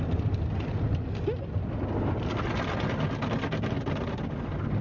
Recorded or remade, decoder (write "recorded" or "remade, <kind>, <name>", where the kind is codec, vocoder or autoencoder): recorded